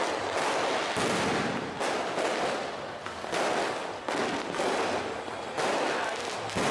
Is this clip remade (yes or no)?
no